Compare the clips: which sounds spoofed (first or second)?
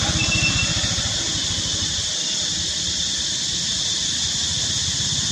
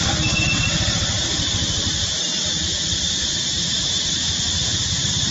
second